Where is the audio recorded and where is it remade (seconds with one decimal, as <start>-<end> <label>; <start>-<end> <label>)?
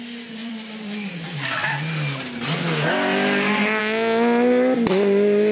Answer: 0.0-0.4 recorded; 0.4-1.1 remade; 1.1-5.5 recorded